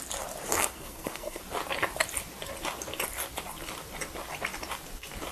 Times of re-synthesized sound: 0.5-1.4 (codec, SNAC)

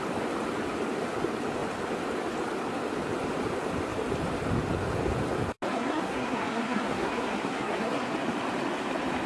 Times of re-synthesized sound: 5.7-8.1 (codec, SNAC)

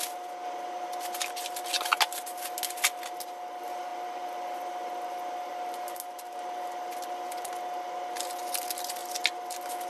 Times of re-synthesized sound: none

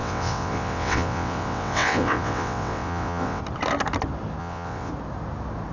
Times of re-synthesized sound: 0.0-3.4 (vocoder, WaveNeXt); 4.4-4.9

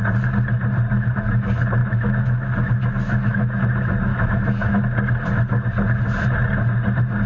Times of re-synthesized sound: 1.8-3.6 (autoencoder, DAC-VAE); 4.1-4.8

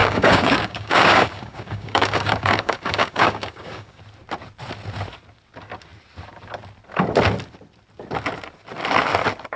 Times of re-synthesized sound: 0.0-4.0 (codec, DAC)

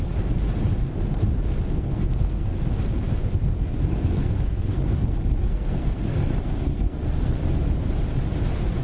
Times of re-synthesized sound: 1.7-2.6 (codec, SNAC); 3.4-7.4

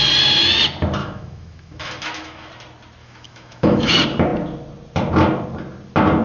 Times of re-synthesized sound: 1.0-2.5 (autoencoder, DAC-VAE); 3.0-3.9